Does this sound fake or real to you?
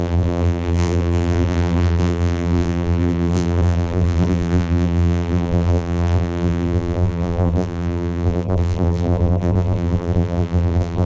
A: fake